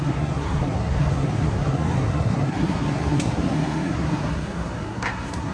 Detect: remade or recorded remade